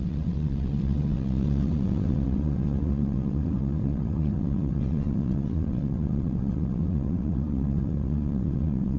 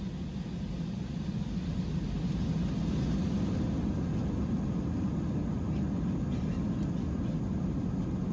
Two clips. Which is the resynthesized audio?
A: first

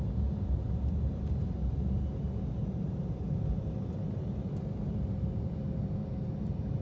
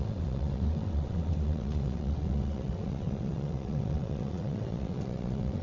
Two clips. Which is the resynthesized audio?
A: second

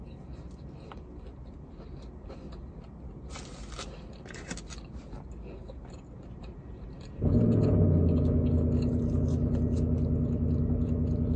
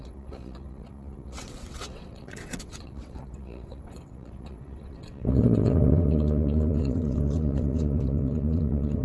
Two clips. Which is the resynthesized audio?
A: second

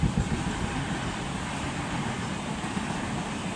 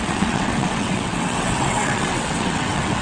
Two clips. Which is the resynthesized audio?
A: second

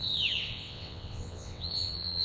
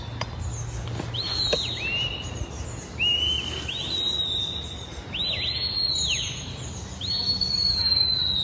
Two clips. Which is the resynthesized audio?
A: first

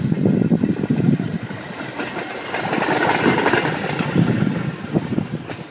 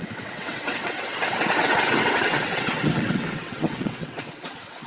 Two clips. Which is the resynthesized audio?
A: second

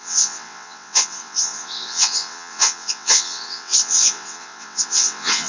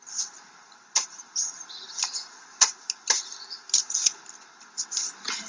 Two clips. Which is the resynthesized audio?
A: first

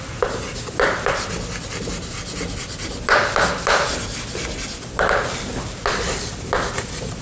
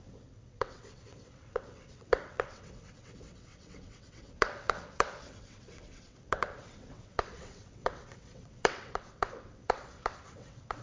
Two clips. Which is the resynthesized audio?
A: second